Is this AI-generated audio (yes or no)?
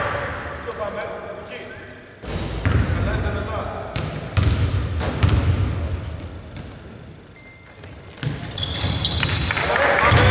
no